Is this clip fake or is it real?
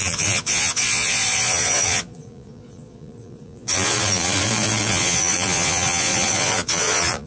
fake